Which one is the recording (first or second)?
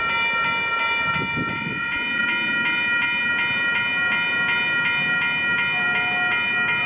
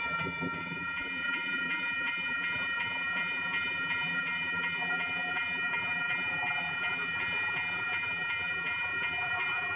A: first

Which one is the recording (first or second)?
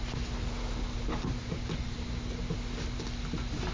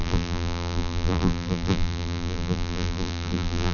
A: first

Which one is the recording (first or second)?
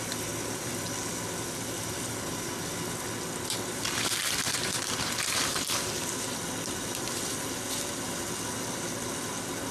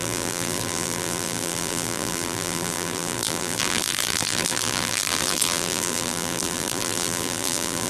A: first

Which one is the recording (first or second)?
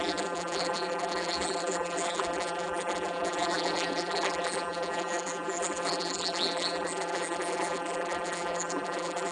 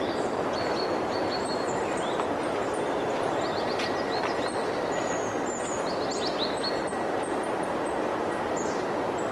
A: second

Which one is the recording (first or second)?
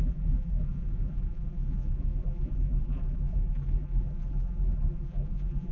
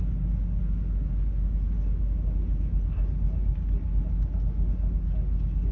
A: second